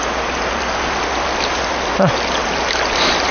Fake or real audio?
real